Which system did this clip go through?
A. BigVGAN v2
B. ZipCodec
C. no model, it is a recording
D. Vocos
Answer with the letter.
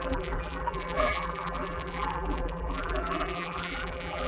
A